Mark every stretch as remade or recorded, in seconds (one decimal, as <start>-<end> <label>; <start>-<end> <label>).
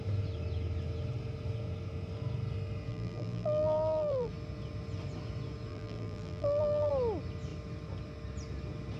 0.0-2.9 recorded; 2.9-4.3 remade; 4.3-5.7 recorded; 5.7-6.9 remade; 6.9-9.0 recorded